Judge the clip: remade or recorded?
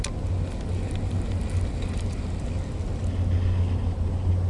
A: recorded